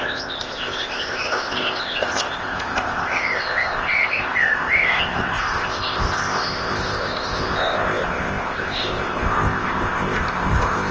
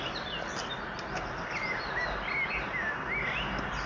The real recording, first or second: second